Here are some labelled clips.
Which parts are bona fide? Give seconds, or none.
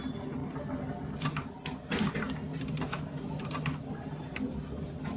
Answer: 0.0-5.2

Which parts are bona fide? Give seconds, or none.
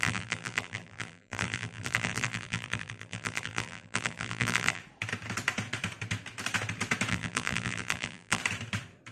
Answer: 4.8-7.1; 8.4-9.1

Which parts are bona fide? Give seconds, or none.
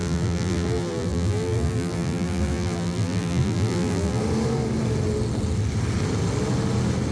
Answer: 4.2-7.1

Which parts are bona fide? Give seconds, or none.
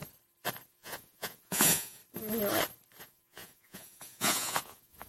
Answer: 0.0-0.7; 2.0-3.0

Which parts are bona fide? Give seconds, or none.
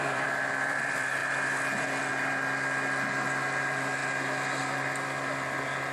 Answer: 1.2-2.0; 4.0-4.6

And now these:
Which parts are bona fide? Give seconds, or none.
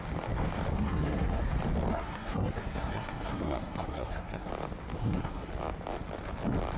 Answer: 0.0-0.7; 1.4-1.9; 4.5-5.0; 5.5-6.8